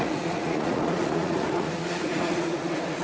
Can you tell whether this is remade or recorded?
remade